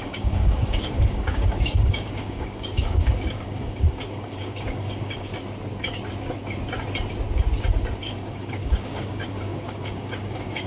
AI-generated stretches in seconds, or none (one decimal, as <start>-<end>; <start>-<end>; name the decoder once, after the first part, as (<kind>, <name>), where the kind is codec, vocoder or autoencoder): 0.0-5.3 (codec, DAC); 8.0-10.7

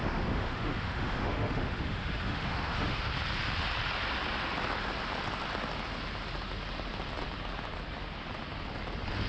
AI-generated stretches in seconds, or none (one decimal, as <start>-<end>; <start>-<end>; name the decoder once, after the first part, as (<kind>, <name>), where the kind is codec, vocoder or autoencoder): 0.0-3.1 (autoencoder, DAC-VAE)

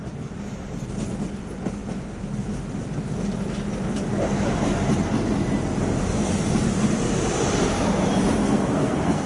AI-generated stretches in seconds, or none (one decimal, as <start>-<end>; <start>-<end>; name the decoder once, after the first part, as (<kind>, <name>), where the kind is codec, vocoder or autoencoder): 8.4-9.3 (codec, SNAC)

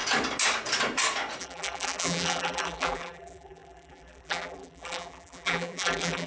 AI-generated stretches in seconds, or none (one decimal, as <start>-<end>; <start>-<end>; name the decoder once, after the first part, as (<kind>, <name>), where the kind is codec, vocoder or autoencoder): 1.4-6.3 (vocoder, BigVGAN v2)

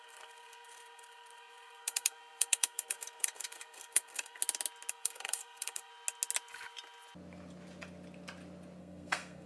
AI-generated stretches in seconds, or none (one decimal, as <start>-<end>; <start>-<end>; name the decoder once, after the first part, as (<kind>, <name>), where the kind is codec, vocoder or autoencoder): 0.0-4.4 (codec, SNAC); 4.9-5.9; 8.8-9.5

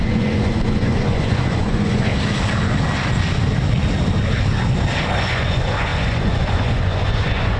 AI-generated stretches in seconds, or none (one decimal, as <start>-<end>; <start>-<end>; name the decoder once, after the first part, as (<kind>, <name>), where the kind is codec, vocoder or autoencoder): 0.0-2.1 (vocoder, Vocos); 5.2-7.6